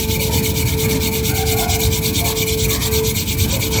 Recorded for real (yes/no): yes